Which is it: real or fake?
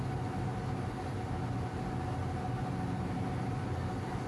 real